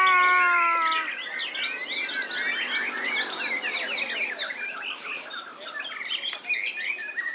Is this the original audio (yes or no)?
yes